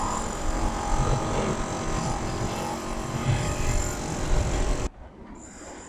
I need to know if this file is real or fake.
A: fake